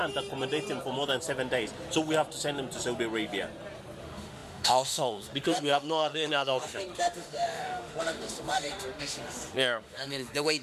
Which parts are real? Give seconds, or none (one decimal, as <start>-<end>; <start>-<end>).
0.0-4.0